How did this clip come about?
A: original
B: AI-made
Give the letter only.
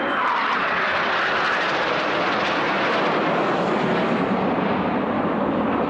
A